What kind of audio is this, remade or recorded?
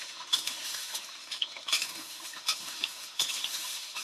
remade